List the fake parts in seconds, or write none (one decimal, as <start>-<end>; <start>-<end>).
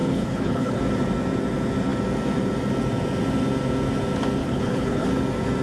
0.0-0.8; 4.4-5.1